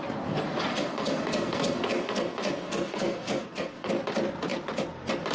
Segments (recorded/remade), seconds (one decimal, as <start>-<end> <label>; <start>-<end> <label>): 0.0-0.7 recorded; 0.7-3.9 remade; 3.9-5.3 recorded